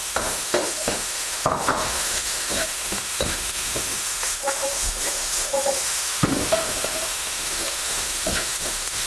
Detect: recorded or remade remade